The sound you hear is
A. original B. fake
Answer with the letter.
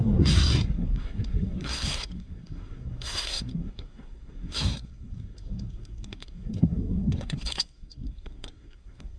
B